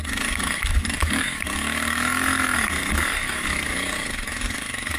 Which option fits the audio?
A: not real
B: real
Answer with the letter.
A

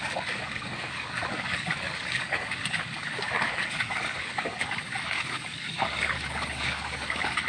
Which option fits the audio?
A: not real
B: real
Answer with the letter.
A